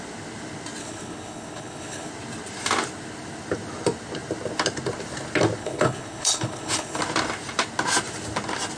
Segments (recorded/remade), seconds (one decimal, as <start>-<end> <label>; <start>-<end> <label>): 0.0-0.8 recorded; 0.8-2.1 remade; 2.1-5.6 recorded; 5.6-7.0 remade; 7.0-8.8 recorded

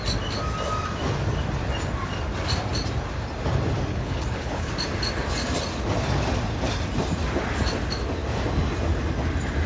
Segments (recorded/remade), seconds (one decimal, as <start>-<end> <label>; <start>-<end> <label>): 0.0-3.9 recorded; 3.9-4.7 remade; 4.7-9.7 recorded

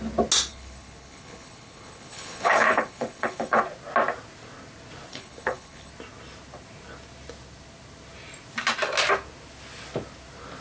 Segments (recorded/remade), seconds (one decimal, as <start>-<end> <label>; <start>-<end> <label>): 0.0-0.5 recorded; 0.5-3.6 remade; 3.6-5.1 recorded; 5.1-5.9 remade; 5.9-10.6 recorded